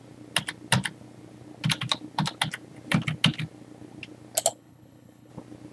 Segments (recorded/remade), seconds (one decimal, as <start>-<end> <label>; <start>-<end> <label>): 0.0-4.5 recorded; 4.5-5.3 remade; 5.3-5.7 recorded